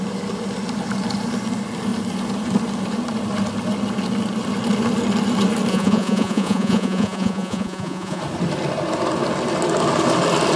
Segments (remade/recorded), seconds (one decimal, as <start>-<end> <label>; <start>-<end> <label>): 0.0-5.7 recorded; 5.7-8.2 remade; 8.2-10.6 recorded